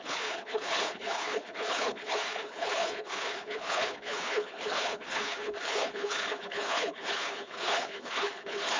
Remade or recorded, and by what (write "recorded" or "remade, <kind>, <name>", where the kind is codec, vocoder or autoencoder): remade, codec, HILCodec